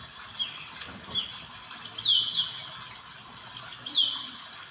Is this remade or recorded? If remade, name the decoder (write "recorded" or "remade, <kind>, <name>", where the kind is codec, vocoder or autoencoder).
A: recorded